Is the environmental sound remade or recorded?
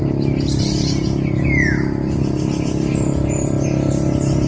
recorded